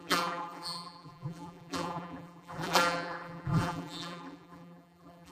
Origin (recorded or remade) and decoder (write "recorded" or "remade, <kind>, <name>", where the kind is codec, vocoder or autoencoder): remade, vocoder, BigVGAN v2